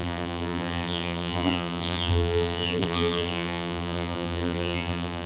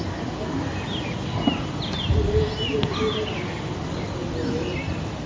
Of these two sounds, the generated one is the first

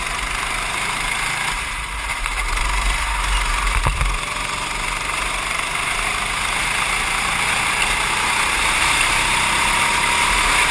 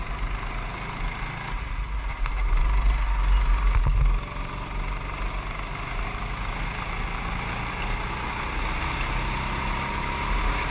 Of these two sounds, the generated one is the first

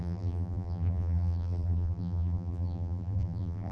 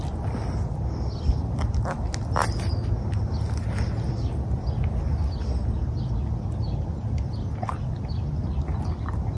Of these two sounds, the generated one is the first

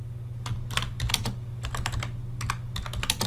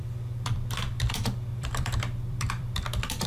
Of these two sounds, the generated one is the second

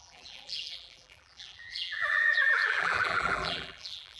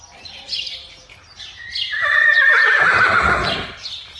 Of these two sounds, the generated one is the first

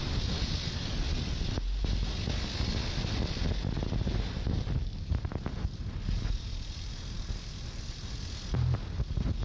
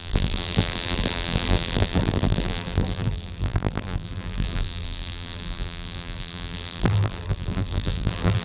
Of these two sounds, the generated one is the second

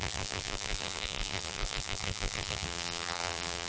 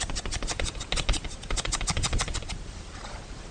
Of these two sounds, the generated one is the first